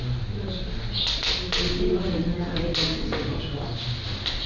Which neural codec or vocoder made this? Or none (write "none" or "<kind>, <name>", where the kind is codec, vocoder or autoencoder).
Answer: none